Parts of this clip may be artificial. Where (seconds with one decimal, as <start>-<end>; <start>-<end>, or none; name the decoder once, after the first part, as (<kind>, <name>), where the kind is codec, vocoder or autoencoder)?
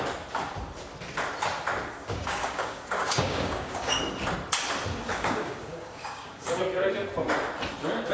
2.0-4.0 (codec, DAC); 5.1-6.6